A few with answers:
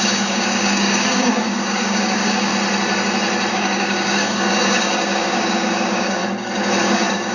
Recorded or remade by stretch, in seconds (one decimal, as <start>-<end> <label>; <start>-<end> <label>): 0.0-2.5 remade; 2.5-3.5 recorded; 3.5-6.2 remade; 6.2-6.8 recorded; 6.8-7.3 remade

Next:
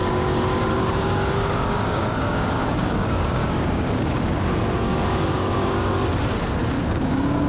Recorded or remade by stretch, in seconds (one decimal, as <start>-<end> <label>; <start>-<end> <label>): 0.0-4.5 remade; 4.5-4.9 recorded; 4.9-5.9 remade; 5.9-6.6 recorded; 6.6-7.5 remade

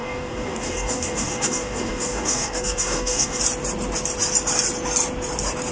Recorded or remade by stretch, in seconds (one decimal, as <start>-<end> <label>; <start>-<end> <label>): 0.0-3.4 remade; 3.4-5.7 recorded

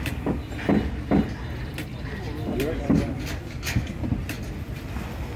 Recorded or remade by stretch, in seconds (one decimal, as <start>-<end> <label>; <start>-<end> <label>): 0.0-0.4 remade; 0.4-3.4 recorded; 3.4-4.0 remade; 4.0-5.4 recorded